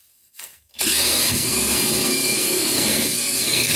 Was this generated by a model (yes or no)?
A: yes